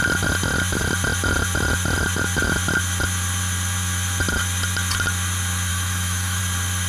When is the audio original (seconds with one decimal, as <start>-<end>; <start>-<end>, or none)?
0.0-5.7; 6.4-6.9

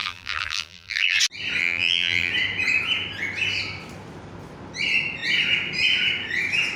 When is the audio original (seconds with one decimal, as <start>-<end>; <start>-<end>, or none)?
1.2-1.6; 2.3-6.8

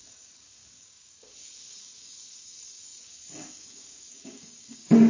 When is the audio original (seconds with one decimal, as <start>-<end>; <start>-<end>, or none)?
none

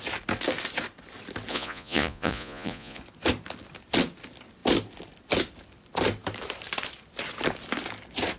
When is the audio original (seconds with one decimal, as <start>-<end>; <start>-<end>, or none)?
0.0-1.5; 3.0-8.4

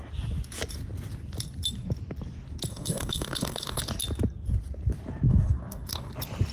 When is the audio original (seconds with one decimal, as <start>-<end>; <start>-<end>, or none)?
0.0-2.7; 3.8-5.3; 6.1-6.5